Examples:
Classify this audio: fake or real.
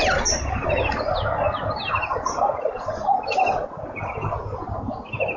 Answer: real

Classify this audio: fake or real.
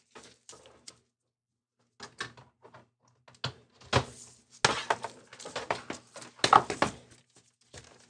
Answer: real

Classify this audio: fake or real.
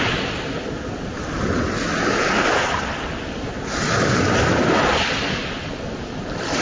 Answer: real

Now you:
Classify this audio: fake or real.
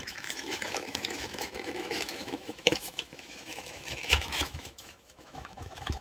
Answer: fake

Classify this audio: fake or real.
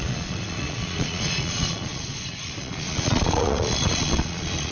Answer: fake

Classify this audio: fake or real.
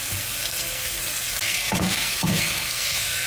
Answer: fake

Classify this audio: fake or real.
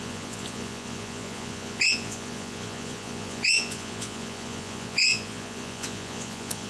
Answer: fake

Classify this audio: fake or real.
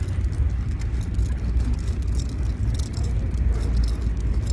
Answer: real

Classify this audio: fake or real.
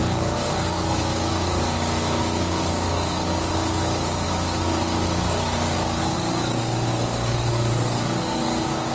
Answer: fake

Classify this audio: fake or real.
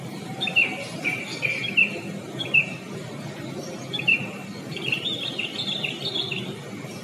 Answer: real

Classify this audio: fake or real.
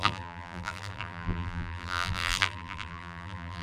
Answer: fake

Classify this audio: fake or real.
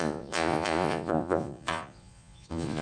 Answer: fake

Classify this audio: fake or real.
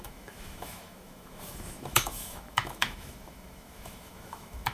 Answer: fake